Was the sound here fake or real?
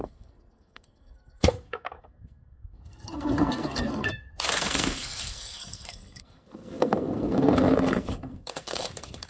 fake